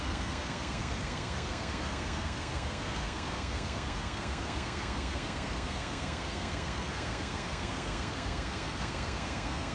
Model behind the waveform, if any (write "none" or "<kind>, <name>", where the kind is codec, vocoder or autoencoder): codec, SNAC